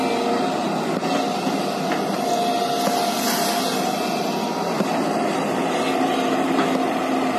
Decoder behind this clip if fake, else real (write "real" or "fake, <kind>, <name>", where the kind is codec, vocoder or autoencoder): real